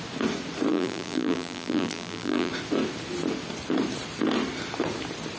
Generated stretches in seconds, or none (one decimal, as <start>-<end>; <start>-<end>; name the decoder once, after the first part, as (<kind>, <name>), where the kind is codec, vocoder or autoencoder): 0.7-2.5 (vocoder, BigVGAN v2)